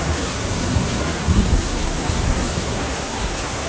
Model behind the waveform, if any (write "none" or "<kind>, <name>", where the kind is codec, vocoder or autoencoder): codec, SNAC